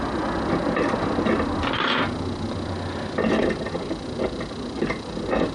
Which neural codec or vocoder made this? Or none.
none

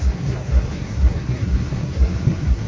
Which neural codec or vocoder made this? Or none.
codec, SNAC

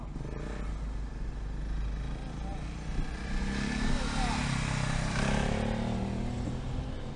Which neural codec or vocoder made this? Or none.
none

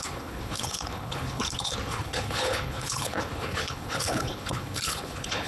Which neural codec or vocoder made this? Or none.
codec, HILCodec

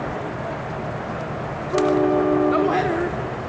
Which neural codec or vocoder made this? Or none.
none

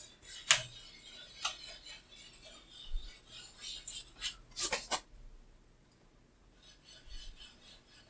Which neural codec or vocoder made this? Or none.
none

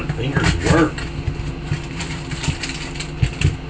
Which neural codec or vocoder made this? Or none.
none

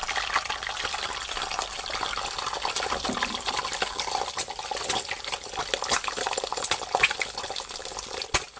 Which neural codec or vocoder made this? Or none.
none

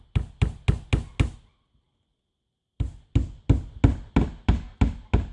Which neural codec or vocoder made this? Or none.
none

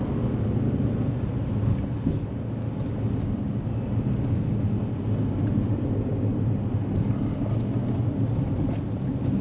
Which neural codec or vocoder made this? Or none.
none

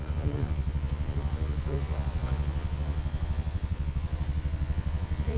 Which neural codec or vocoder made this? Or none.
vocoder, Vocos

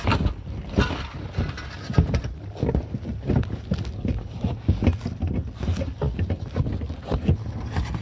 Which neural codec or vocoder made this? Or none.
none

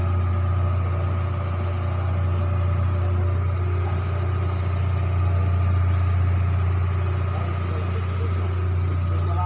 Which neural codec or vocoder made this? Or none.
none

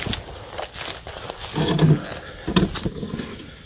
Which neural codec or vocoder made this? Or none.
none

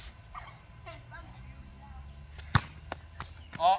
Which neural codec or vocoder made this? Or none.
none